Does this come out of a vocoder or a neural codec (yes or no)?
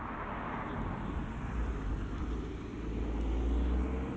no